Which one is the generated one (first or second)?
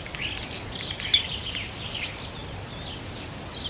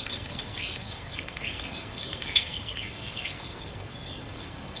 second